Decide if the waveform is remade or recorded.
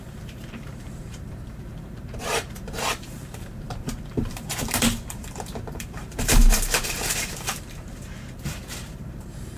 remade